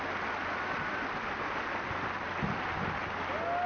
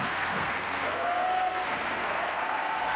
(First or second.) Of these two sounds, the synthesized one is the second